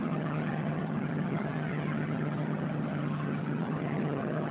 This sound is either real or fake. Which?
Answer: fake